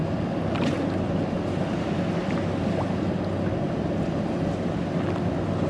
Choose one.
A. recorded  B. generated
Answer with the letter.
A